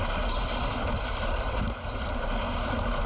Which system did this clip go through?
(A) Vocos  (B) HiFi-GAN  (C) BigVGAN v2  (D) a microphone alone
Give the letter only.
D